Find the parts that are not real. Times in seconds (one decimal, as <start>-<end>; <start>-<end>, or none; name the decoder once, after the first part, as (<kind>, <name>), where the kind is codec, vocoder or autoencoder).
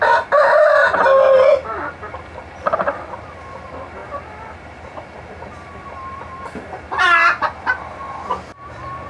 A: none